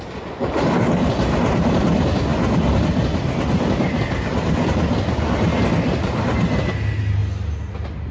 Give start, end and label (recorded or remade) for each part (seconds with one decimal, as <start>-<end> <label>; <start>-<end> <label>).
0.0-0.4 recorded; 0.4-1.1 remade; 1.1-8.1 recorded